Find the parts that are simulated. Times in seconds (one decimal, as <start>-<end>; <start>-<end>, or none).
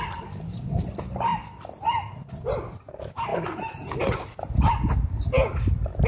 none